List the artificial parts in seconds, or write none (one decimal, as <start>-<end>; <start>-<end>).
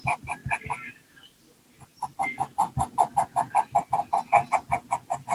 none